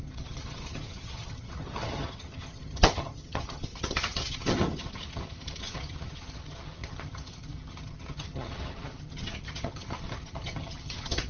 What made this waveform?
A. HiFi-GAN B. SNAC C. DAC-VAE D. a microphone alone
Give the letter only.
A